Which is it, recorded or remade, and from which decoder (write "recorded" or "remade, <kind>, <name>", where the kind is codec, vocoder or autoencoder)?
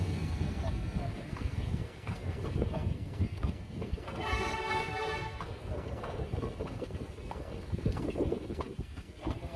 remade, codec, SNAC